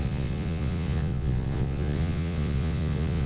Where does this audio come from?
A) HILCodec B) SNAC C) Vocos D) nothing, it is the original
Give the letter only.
C